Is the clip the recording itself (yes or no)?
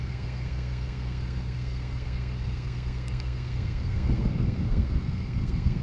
no